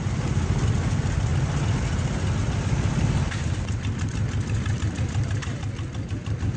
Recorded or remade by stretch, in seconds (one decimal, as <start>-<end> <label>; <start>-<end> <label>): 0.0-6.6 recorded